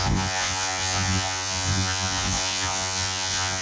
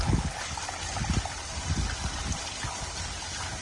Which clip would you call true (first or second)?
second